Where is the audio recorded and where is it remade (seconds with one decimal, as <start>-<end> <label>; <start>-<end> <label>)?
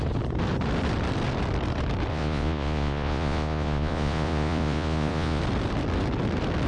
0.0-2.1 recorded; 2.1-5.4 remade; 5.4-6.7 recorded